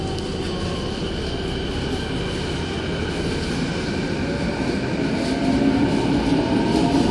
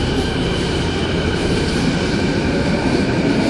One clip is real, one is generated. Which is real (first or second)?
first